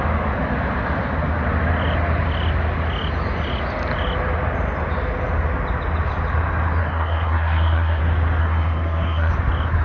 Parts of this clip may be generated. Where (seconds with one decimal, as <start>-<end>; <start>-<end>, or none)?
6.8-8.0; 8.4-9.3